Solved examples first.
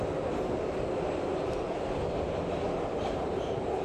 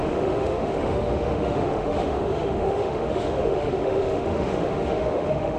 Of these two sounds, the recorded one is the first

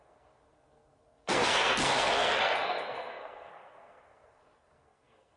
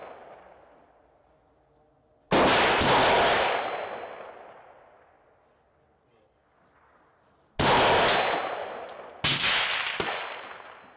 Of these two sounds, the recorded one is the second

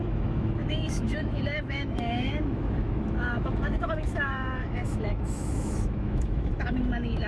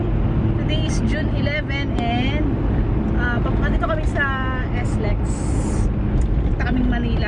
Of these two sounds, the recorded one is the second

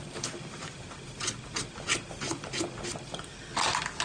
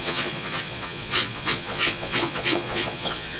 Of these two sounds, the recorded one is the first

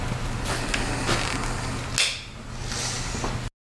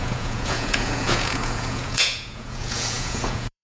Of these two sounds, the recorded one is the first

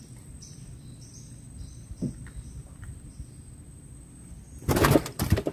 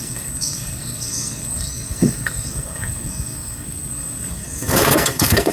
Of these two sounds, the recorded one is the first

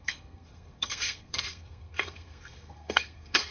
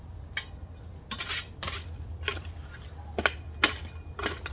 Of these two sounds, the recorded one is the second